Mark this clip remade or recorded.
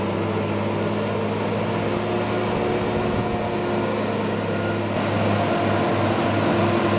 recorded